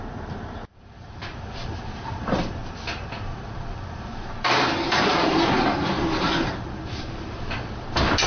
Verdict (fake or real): fake